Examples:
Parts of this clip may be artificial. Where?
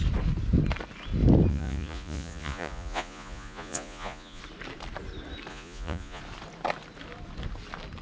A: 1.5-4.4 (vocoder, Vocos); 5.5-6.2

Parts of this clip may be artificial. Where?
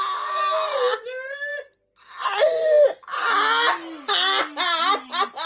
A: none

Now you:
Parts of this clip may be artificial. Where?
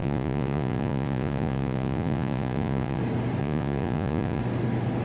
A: 0.0-3.0 (vocoder, Vocos); 3.4-4.4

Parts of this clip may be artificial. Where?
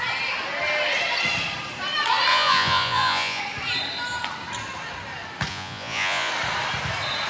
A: 2.3-3.4 (vocoder, Vocos); 5.5-6.3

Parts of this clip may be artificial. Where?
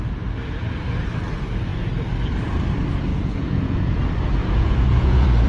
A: 3.1-4.0 (vocoder, Vocos); 4.4-5.5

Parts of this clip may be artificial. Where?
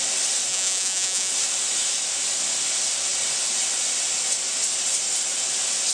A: 0.5-1.3 (vocoder, Vocos)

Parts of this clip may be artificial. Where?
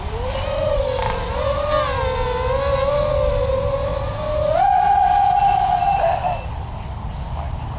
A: none